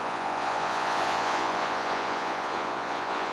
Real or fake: fake